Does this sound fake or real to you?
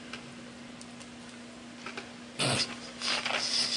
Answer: real